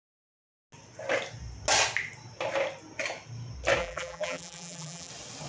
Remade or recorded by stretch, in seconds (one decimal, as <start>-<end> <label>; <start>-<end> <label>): 0.0-3.8 recorded; 3.8-5.1 remade; 5.1-5.5 recorded

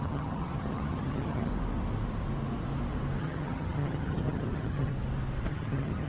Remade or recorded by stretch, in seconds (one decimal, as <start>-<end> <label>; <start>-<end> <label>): 0.0-1.5 remade; 1.5-3.2 recorded; 3.2-4.9 remade; 4.9-5.5 recorded; 5.5-6.1 remade

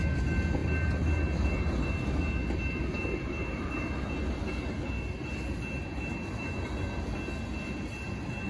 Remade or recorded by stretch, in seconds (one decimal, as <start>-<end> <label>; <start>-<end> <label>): 0.0-8.5 recorded